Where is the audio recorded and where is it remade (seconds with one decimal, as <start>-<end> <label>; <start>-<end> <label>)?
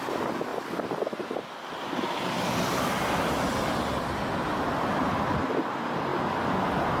0.0-7.0 recorded